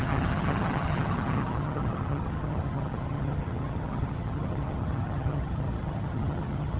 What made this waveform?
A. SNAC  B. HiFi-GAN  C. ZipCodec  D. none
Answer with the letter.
B